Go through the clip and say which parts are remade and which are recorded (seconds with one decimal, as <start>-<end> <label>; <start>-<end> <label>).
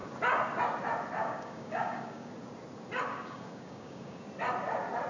0.0-1.2 recorded; 1.2-2.3 remade; 2.3-3.1 recorded; 3.1-4.2 remade; 4.2-5.1 recorded